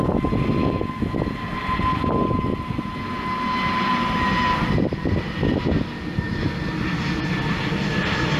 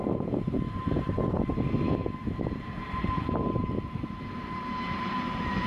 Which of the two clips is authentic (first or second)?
first